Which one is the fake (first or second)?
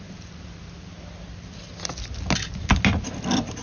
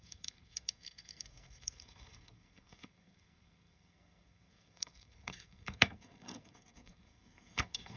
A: second